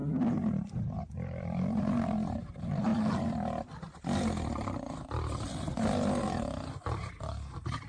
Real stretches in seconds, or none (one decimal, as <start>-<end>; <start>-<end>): 0.0-1.0; 2.9-6.2